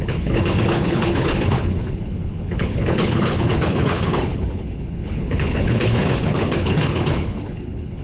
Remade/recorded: remade